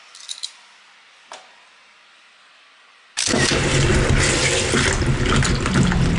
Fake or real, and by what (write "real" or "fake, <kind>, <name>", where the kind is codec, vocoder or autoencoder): real